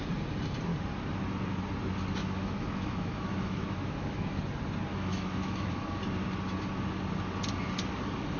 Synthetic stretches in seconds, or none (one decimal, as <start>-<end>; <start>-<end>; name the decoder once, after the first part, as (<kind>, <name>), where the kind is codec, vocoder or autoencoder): 2.2-4.4 (autoencoder, DAC-VAE); 4.9-6.0